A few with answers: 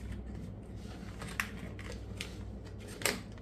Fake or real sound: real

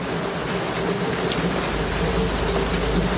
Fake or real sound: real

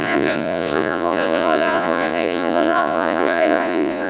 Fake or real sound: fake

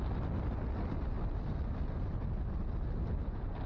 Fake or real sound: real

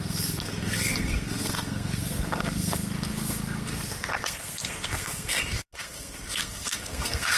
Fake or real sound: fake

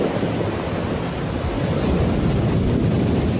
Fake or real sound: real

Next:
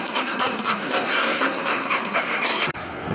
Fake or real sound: fake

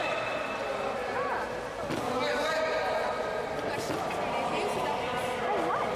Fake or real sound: real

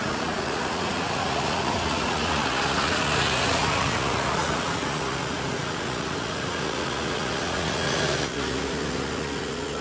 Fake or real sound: fake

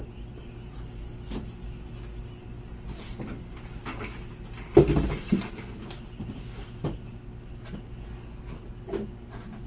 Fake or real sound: real